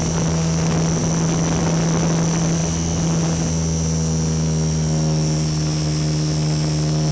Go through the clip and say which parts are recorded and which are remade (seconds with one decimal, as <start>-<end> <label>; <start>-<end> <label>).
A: 0.0-7.1 recorded